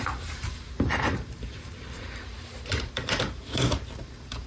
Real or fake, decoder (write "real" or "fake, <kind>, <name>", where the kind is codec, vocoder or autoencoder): fake, vocoder, BigVGAN v2